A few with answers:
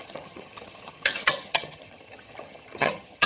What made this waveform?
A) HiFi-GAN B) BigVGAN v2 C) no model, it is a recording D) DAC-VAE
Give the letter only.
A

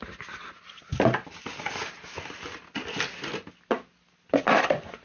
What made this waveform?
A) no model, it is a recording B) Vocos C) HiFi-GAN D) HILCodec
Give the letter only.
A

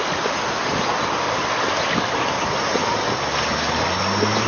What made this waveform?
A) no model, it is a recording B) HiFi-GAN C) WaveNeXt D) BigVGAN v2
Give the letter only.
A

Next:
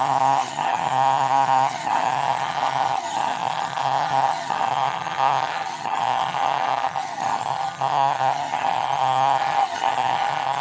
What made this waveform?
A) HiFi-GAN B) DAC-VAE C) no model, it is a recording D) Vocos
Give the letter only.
A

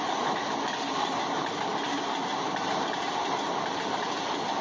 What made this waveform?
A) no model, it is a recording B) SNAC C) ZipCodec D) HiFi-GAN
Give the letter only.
A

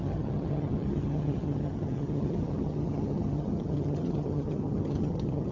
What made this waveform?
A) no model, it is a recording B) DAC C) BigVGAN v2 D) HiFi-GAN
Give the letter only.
D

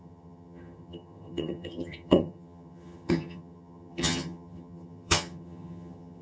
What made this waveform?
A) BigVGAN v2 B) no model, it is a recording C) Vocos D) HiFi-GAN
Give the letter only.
D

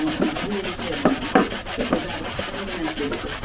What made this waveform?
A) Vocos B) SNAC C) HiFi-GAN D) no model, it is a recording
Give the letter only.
D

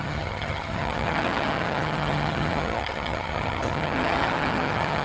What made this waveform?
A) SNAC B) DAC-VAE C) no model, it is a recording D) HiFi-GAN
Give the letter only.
D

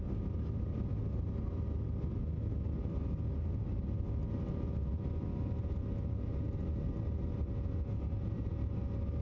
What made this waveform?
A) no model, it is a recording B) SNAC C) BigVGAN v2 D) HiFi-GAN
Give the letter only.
A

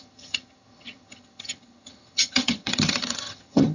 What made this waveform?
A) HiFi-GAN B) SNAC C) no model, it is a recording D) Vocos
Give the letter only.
A